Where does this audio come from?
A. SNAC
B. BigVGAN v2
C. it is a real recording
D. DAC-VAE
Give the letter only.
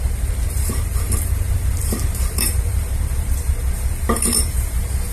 B